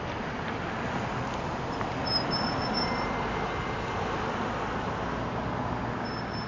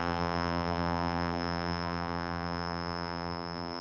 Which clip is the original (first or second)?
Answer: first